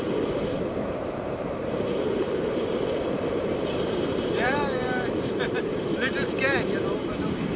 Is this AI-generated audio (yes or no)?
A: yes